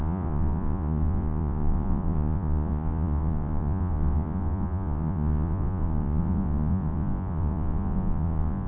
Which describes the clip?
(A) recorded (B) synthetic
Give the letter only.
B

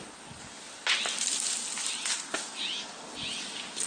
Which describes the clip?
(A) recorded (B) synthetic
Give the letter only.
A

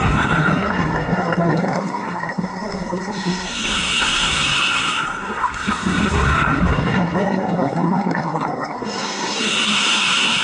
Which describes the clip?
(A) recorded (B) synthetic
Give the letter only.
B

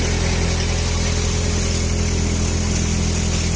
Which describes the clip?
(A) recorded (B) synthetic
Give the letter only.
A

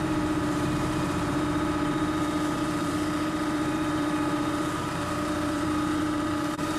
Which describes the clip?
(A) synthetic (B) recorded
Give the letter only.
A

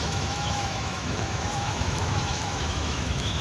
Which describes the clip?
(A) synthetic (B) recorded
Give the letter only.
A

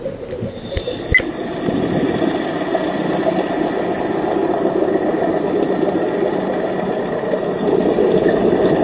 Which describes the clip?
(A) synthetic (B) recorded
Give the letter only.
B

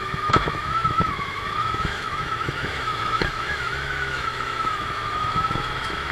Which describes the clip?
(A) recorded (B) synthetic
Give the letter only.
B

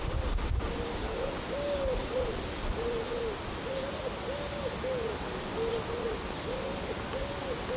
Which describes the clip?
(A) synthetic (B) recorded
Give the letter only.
B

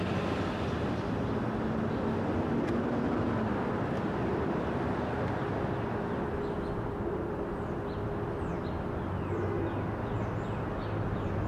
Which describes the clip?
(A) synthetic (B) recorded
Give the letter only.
B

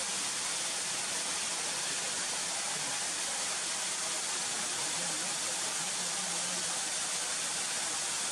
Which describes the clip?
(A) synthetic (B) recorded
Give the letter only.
B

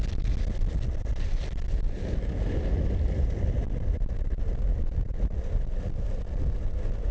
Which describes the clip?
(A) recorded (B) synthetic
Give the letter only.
A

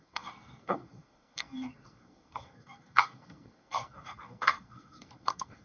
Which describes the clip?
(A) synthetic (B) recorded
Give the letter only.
A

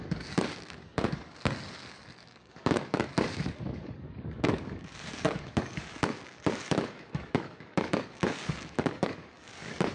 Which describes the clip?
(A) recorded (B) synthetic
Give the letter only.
B